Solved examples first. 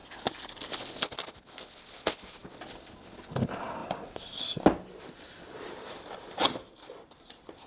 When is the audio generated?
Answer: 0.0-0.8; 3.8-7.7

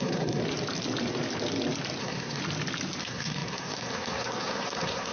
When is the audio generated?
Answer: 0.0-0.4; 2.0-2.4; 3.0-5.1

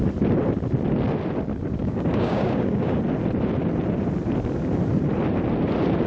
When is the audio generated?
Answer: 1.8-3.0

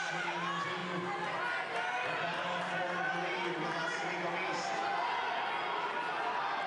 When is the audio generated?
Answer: none

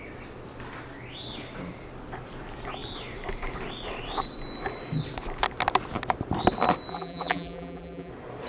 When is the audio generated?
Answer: 6.9-8.1